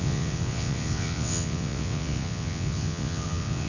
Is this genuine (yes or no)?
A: no